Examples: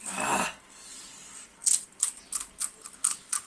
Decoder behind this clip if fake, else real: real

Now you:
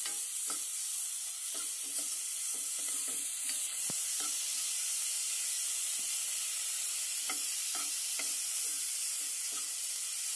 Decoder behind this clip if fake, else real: real